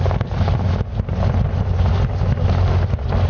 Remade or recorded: recorded